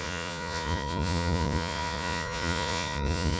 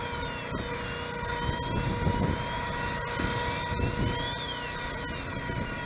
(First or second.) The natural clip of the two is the second